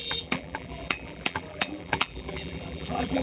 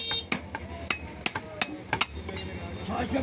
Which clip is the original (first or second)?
second